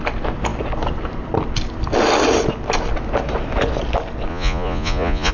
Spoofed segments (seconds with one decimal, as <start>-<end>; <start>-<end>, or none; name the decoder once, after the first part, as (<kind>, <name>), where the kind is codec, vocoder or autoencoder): 4.3-5.3 (vocoder, Vocos)